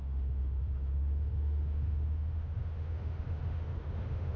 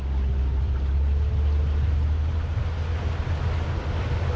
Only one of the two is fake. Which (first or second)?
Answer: first